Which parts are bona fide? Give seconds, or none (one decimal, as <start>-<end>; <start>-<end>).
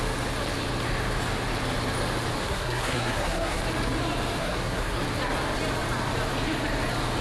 0.0-2.4; 3.6-4.4; 5.0-7.2